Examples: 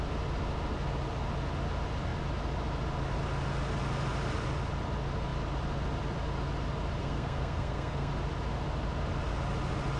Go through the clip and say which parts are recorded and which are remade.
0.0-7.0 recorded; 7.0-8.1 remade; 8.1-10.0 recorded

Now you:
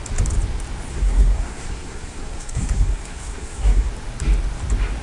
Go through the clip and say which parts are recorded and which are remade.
0.0-0.9 recorded; 0.9-3.9 remade; 3.9-5.0 recorded

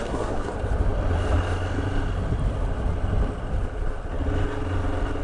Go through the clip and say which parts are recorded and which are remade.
0.0-0.5 remade; 0.5-5.2 recorded

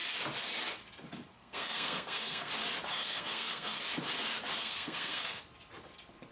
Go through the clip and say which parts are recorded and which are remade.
0.0-1.3 recorded; 1.3-2.5 remade; 2.5-2.9 recorded; 2.9-3.8 remade; 3.8-4.6 recorded; 4.6-5.4 remade; 5.4-6.3 recorded

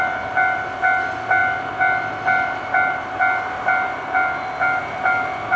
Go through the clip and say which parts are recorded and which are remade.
0.0-5.6 recorded

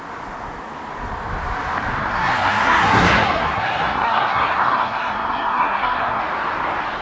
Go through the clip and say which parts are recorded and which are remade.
0.0-2.0 recorded; 2.0-6.2 remade; 6.2-7.0 recorded

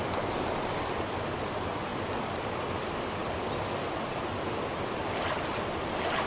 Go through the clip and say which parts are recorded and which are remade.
0.0-6.3 recorded